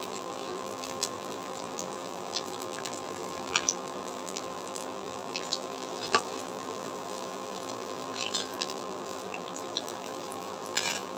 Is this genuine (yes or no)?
no